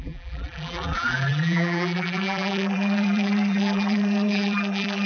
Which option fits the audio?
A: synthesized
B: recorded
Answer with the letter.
A